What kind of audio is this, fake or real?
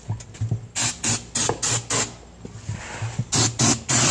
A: real